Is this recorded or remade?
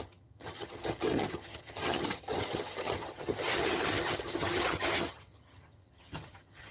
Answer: remade